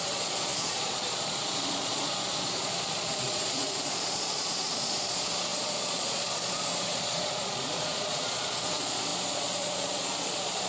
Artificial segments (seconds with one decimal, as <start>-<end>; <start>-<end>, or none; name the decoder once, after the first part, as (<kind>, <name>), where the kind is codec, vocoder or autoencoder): 0.0-10.7 (vocoder, Vocos)